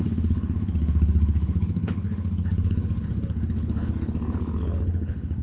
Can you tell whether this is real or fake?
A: fake